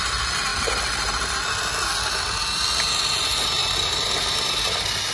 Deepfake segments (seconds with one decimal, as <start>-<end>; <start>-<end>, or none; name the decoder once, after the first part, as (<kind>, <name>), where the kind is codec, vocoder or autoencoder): none